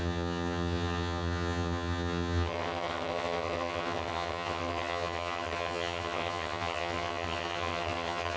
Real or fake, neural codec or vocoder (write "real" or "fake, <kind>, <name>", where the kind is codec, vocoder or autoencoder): fake, vocoder, HiFi-GAN